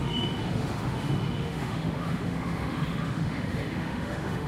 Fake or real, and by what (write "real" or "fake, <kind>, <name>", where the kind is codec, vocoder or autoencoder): fake, autoencoder, DAC-VAE